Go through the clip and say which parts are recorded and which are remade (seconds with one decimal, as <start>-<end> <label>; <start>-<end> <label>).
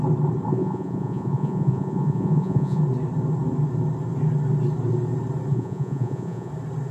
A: 0.0-0.5 recorded; 0.5-2.8 remade; 2.8-5.5 recorded; 5.5-6.5 remade; 6.5-6.9 recorded